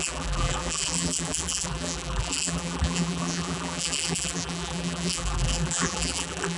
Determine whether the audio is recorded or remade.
remade